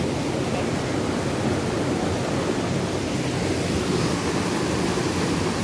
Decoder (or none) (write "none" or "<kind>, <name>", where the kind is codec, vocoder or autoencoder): none